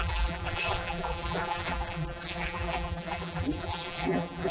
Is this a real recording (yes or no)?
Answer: no